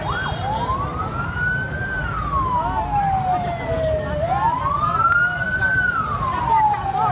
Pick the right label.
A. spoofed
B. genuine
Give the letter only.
B